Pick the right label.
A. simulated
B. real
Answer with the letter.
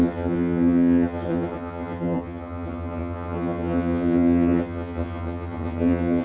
A